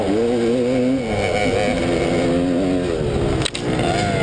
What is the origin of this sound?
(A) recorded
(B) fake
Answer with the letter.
A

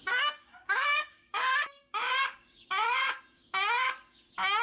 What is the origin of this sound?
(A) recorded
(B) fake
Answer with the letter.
B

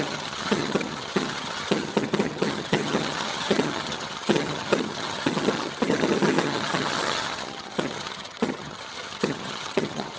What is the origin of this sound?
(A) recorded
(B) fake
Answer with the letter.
B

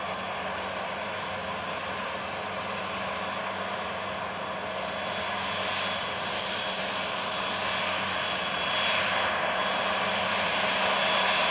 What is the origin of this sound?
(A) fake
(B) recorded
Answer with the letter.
B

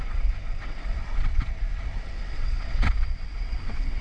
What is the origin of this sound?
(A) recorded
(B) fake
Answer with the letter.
B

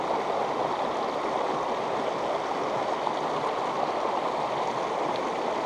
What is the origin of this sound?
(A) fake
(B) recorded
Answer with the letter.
B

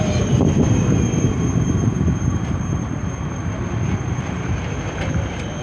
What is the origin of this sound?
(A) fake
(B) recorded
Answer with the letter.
A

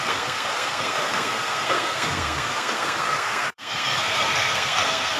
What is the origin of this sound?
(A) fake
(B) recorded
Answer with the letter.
A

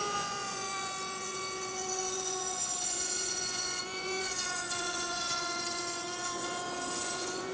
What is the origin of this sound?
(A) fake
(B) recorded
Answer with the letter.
A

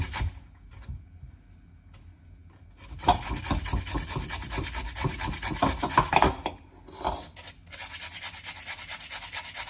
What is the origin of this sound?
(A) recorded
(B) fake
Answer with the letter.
A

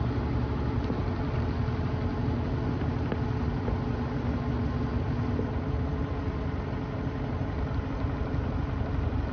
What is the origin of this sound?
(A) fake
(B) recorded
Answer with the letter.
B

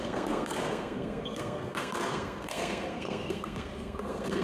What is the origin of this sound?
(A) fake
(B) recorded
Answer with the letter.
A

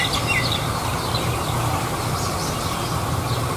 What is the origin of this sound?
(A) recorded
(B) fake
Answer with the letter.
A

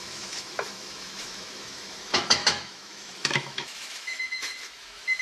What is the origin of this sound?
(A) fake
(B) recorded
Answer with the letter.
A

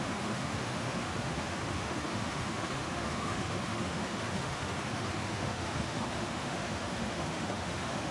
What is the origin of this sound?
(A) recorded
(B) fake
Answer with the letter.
B